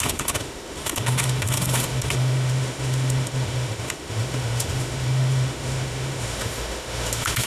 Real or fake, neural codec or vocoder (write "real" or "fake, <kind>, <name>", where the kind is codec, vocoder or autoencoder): fake, autoencoder, DAC-VAE